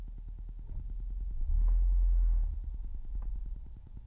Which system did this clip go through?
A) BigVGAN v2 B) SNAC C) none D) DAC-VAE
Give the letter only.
C